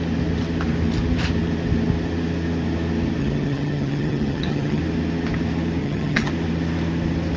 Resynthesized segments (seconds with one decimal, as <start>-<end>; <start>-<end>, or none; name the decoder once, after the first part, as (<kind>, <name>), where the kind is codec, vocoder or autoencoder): 3.2-4.8 (vocoder, HiFi-GAN); 5.8-6.3